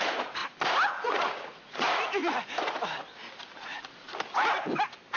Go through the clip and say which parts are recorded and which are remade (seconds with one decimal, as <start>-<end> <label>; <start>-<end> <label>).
0.0-0.4 remade; 0.4-0.9 recorded; 0.9-2.2 remade; 2.2-3.6 recorded; 3.6-4.1 remade; 4.1-5.2 recorded